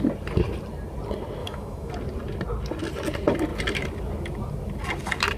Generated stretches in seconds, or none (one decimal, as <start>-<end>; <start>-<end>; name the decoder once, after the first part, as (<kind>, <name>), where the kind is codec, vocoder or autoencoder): 1.4-1.9 (autoencoder, DAC-VAE)